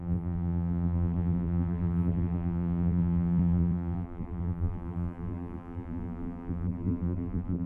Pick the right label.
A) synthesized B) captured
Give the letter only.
A